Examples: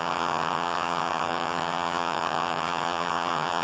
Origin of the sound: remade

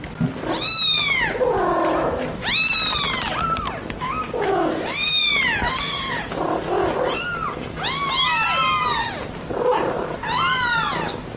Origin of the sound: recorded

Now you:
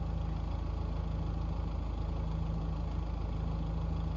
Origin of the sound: recorded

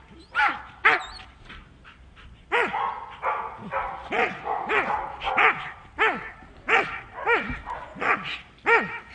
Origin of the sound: recorded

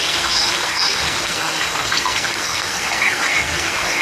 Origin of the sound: remade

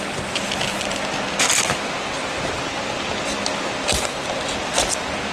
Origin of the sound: recorded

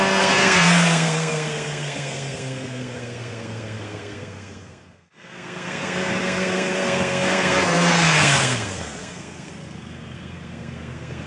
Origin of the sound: remade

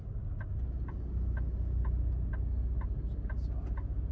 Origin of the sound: recorded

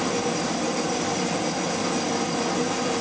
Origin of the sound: recorded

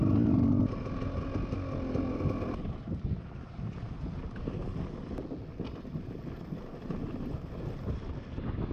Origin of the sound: recorded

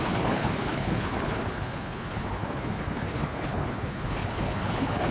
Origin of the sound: remade